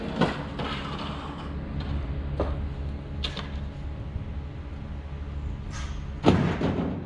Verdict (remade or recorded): recorded